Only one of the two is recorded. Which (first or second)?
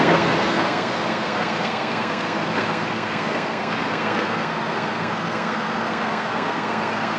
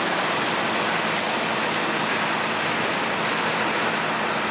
second